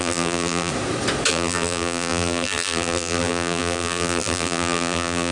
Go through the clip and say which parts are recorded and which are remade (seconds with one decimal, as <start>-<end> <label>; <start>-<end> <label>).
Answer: 0.0-0.7 remade; 0.7-1.3 recorded; 1.3-5.3 remade